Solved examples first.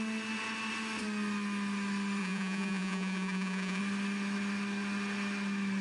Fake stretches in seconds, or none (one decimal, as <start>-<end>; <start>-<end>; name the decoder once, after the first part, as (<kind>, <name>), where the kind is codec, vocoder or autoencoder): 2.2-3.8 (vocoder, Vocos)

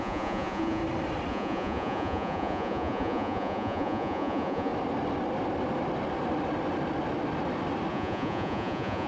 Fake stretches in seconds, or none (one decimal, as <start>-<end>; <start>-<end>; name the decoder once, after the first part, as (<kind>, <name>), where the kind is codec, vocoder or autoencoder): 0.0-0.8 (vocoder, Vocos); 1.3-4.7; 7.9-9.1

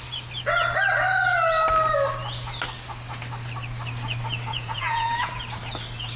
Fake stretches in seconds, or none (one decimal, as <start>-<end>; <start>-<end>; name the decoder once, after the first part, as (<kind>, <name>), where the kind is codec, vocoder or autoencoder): 4.5-5.3 (vocoder, Vocos)